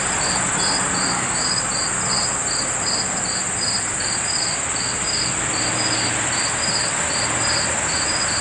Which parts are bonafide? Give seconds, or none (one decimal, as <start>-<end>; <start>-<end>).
0.0-1.1; 1.6-8.4